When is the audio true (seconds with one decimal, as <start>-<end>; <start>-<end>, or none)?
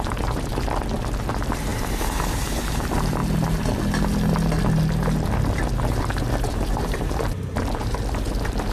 0.5-1.2; 3.2-6.0